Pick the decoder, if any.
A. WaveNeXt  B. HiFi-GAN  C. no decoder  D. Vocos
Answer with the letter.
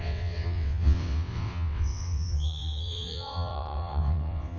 A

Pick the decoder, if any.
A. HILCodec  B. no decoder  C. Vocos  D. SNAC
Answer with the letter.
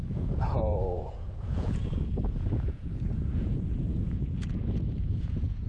C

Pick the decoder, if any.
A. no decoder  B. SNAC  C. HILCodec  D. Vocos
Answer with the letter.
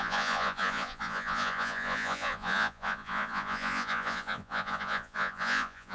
D